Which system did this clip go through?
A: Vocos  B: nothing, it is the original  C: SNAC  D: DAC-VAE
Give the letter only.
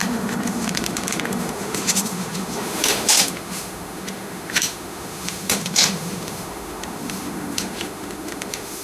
D